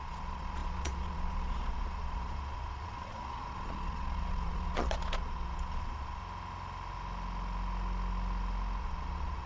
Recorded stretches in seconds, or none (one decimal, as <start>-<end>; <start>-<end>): 6.2-8.8